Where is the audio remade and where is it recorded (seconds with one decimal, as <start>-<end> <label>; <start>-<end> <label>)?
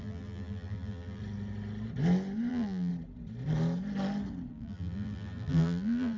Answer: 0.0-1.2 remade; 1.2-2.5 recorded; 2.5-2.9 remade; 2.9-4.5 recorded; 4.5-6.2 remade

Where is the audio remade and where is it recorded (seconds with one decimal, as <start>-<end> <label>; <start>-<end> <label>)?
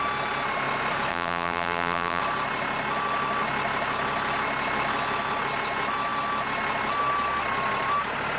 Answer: 0.0-1.1 recorded; 1.1-2.2 remade; 2.2-8.4 recorded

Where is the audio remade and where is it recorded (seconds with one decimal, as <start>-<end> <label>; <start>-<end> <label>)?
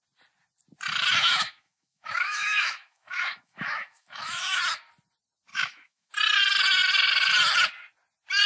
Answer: 0.0-1.2 recorded; 1.2-4.6 remade; 4.6-5.5 recorded; 5.5-6.1 remade; 6.1-8.5 recorded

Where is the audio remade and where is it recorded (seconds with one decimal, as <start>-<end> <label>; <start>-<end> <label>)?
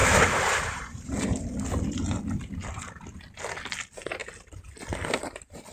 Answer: 0.0-1.4 remade; 1.4-5.7 recorded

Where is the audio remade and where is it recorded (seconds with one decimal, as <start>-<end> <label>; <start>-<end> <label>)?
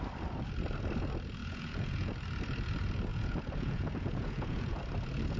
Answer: 0.0-1.4 recorded; 1.4-2.1 remade; 2.1-3.1 recorded; 3.1-4.8 remade; 4.8-5.4 recorded